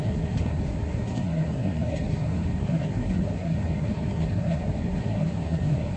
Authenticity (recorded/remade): remade